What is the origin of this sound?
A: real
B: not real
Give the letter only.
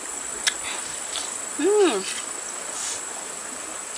A